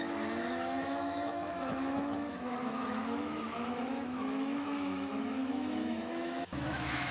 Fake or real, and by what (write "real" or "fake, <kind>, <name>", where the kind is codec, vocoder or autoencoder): fake, autoencoder, DAC-VAE